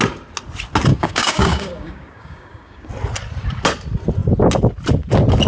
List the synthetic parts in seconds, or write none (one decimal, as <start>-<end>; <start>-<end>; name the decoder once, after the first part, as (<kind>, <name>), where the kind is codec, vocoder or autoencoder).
0.9-2.9 (codec, DAC)